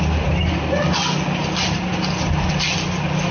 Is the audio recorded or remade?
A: recorded